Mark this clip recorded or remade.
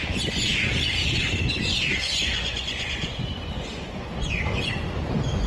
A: remade